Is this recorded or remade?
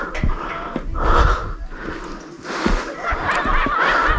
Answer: recorded